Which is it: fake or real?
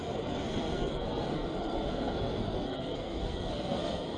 fake